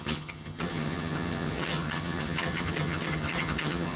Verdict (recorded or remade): remade